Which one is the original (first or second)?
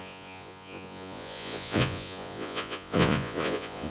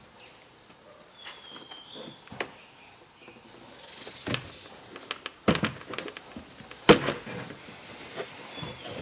second